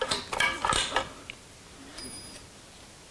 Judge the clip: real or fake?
real